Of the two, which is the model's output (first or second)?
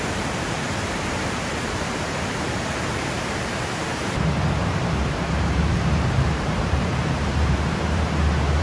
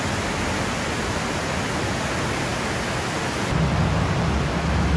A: first